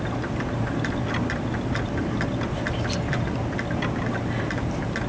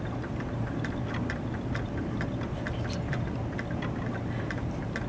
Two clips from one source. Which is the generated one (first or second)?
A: second